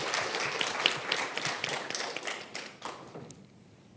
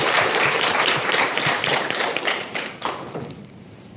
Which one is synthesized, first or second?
second